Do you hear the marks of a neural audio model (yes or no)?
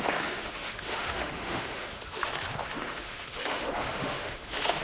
yes